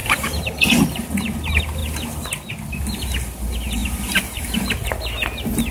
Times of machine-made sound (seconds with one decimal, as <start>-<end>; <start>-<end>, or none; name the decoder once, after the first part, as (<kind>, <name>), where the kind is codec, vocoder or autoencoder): 0.0-0.6 (vocoder, BigVGAN v2); 3.8-4.6